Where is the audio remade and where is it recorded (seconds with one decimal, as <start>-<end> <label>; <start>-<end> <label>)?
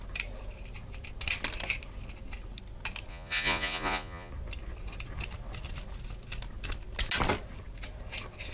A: 0.0-3.1 recorded; 3.1-4.3 remade; 4.3-8.5 recorded